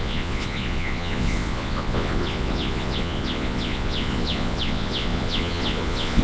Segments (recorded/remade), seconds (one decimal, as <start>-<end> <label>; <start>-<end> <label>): 0.0-6.2 remade